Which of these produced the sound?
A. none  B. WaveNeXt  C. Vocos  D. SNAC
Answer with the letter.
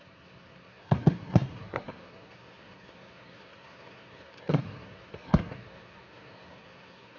D